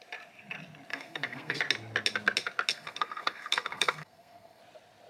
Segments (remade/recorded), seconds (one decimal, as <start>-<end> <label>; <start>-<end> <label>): 0.0-0.9 recorded; 0.9-1.6 remade; 1.6-2.7 recorded; 2.7-4.6 remade; 4.6-5.1 recorded